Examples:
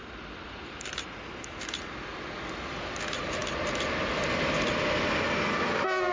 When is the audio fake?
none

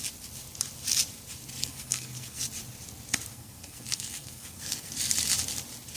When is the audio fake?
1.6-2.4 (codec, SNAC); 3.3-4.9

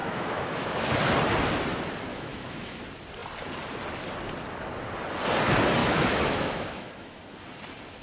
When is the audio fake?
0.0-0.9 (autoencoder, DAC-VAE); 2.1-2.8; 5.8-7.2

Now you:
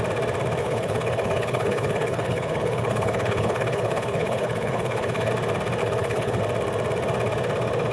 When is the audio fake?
0.6-5.3 (codec, HILCodec); 5.8-6.4

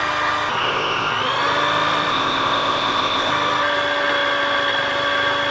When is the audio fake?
0.6-1.1 (codec, ZipCodec); 2.1-3.3

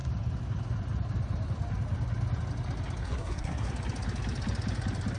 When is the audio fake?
3.0-3.7 (codec, SNAC)

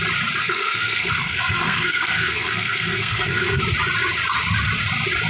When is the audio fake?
0.4-3.6 (codec, SNAC)

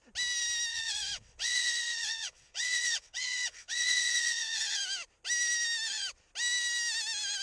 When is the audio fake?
0.7-4.8 (vocoder, WaveNeXt)